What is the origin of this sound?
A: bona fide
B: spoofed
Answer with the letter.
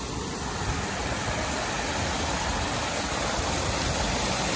A